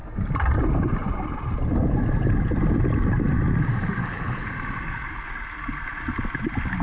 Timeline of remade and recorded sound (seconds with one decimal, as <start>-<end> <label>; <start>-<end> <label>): 0.0-4.0 recorded; 4.0-4.5 remade; 4.5-6.8 recorded